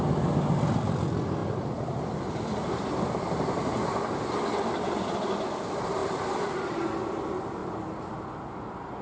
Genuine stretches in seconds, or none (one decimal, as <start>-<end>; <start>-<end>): 0.0-1.4; 3.1-6.0; 7.0-9.0